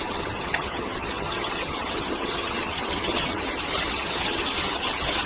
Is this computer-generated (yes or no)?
yes